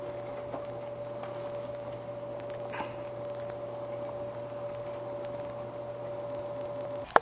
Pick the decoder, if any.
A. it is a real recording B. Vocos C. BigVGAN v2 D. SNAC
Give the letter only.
A